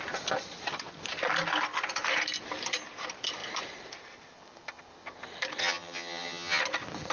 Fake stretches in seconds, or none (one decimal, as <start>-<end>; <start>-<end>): 5.6-6.6